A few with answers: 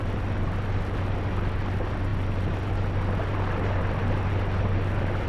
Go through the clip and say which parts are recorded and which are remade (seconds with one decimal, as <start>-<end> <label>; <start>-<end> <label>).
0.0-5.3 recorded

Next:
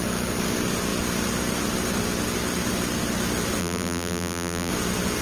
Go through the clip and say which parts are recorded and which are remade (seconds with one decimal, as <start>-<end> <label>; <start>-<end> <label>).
0.0-3.6 recorded; 3.6-4.7 remade; 4.7-5.2 recorded

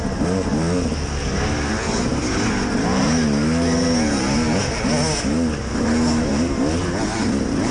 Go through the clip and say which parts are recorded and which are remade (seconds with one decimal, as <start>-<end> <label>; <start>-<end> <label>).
0.0-7.7 recorded